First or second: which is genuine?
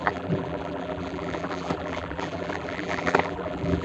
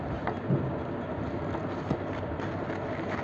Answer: second